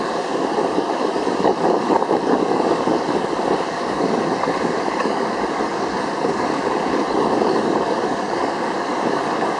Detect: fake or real fake